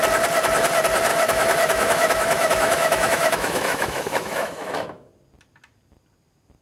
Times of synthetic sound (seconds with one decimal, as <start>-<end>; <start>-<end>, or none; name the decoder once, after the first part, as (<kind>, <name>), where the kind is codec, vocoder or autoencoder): 1.1-5.1 (autoencoder, DAC-VAE)